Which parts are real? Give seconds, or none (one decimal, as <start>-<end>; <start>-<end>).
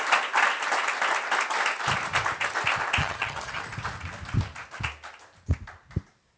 0.0-3.0; 3.6-6.4